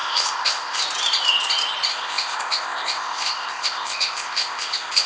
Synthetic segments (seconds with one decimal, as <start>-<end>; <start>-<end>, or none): 0.0-0.8; 1.9-5.1